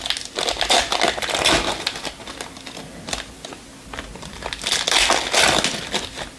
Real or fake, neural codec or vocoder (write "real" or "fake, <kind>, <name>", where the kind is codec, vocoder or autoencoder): real